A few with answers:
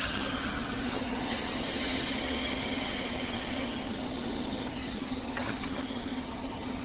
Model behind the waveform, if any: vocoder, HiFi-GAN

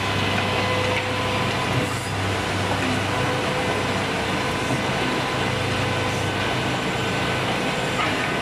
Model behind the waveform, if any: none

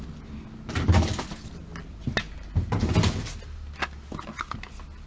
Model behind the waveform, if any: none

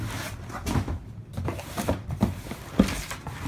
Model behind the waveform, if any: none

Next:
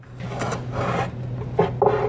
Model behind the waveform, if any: none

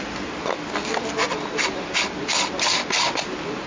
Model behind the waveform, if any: none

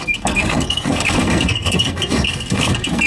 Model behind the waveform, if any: codec, SNAC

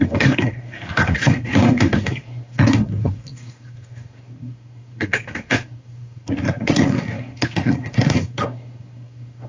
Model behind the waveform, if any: codec, SNAC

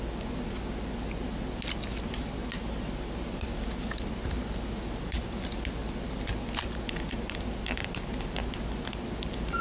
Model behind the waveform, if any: none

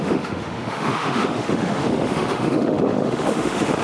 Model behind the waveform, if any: autoencoder, DAC-VAE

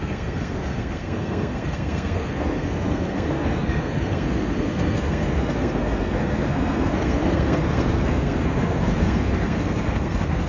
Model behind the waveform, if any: codec, SNAC